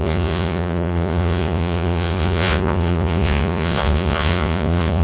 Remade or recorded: remade